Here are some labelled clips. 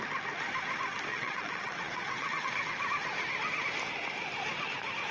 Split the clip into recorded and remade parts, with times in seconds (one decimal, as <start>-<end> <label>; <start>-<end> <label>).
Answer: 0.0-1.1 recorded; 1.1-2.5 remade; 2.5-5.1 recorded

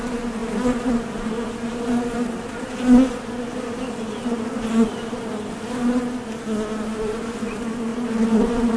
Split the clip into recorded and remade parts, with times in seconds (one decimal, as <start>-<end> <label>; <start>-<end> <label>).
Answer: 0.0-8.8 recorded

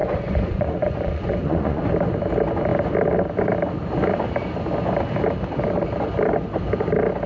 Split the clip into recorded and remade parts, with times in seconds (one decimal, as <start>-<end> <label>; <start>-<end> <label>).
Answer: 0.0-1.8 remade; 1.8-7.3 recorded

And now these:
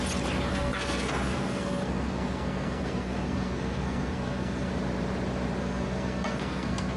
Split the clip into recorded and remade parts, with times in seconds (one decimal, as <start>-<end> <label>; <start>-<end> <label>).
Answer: 0.0-0.5 recorded; 0.5-4.7 remade; 4.7-5.6 recorded; 5.6-7.0 remade